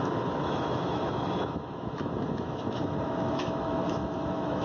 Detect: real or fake fake